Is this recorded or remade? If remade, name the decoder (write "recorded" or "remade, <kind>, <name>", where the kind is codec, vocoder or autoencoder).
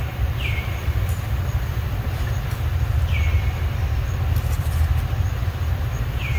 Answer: remade, vocoder, BigVGAN v2